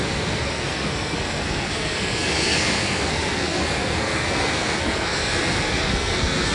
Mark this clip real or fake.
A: fake